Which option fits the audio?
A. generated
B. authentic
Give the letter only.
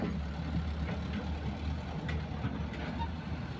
B